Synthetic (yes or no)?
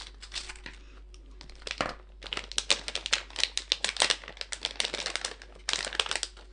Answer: no